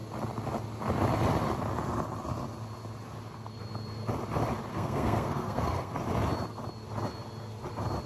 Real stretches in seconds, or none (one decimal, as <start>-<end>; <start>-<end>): 0.0-4.7; 5.9-8.1